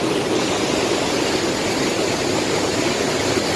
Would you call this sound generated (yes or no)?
no